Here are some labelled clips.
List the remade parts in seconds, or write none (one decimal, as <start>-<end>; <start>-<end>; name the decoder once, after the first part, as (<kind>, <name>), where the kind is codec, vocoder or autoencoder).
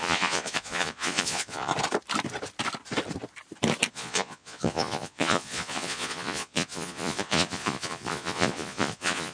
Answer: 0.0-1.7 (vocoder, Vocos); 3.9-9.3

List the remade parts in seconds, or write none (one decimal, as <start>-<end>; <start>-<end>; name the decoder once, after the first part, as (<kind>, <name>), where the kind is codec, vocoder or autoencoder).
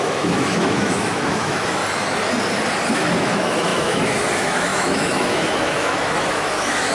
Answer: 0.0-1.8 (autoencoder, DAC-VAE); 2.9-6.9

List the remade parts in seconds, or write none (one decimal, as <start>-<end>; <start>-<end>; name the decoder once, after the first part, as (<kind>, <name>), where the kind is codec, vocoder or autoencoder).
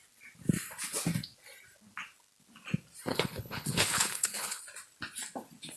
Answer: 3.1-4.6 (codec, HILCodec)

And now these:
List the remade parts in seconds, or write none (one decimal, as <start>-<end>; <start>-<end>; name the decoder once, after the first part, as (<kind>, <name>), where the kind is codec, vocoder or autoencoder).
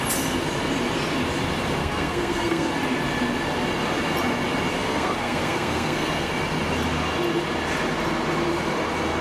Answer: 1.8-2.7 (codec, SNAC); 4.7-6.3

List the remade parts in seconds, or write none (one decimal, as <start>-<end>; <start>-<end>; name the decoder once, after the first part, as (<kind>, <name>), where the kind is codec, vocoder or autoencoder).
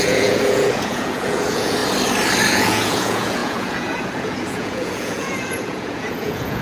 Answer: 0.0-1.8 (vocoder, Vocos); 2.5-6.6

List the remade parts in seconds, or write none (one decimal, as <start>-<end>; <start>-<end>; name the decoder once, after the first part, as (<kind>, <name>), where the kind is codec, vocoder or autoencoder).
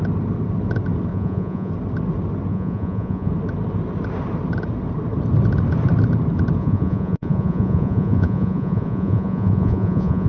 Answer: 1.1-1.7 (vocoder, Vocos); 2.5-3.3; 6.6-10.3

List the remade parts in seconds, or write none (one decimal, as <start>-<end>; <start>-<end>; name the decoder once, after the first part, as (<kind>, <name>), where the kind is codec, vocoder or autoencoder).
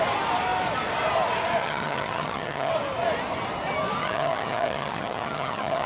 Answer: 1.6-2.7 (vocoder, HiFi-GAN); 4.0-5.9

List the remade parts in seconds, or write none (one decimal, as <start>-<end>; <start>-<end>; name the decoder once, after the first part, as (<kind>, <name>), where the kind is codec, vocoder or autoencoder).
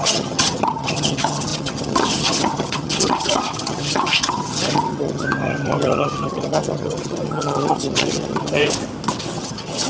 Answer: 0.0-8.6 (vocoder, HiFi-GAN); 9.2-9.9